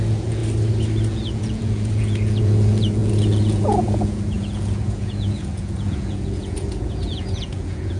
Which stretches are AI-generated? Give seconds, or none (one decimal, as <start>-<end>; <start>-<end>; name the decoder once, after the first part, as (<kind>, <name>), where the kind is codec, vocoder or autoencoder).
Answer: 0.0-0.4 (vocoder, Vocos); 1.1-8.0

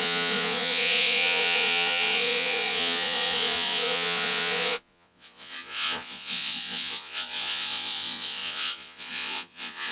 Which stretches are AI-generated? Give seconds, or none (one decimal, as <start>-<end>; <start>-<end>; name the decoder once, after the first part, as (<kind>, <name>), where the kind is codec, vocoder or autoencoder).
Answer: 0.0-9.9 (vocoder, Vocos)

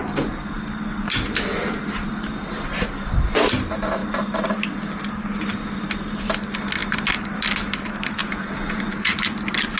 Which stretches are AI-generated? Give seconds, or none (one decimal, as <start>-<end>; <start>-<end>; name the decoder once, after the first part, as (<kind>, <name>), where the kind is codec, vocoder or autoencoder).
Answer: 8.2-9.1 (vocoder, Vocos)

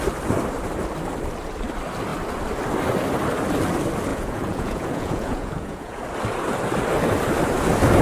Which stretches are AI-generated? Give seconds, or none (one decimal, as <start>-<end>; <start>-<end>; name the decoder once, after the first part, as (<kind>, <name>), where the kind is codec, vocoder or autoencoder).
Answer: 4.1-6.0 (vocoder, Vocos)

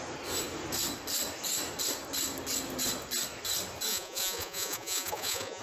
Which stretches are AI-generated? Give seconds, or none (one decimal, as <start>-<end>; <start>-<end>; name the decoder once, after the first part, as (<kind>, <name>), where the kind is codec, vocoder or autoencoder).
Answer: 3.9-5.6 (vocoder, Vocos)